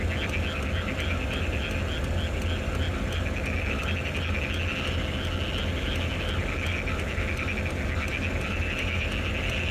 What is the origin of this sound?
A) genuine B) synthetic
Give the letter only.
A